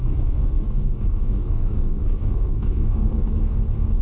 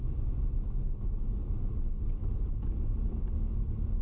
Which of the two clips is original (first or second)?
second